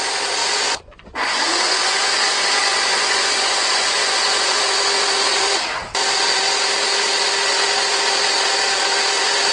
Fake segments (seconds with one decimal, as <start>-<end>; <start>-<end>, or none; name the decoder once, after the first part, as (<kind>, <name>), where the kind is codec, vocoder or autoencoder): 0.4-4.6 (vocoder, Vocos)